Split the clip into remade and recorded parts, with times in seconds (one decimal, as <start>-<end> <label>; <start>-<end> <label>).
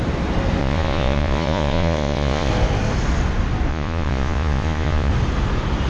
0.0-0.6 recorded; 0.6-2.5 remade; 2.5-3.7 recorded; 3.7-5.1 remade; 5.1-5.9 recorded